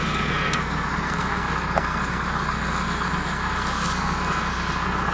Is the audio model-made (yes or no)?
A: yes